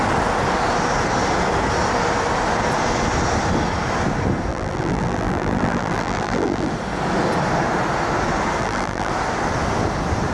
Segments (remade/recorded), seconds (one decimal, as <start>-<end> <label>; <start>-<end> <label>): 0.0-4.5 recorded; 4.5-6.7 remade; 6.7-8.6 recorded; 8.6-9.1 remade; 9.1-10.3 recorded